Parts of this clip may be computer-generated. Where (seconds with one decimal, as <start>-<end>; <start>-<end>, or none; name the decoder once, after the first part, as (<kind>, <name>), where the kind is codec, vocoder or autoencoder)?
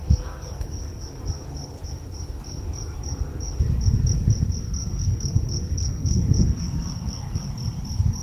0.0-1.2 (codec, SNAC); 4.8-7.5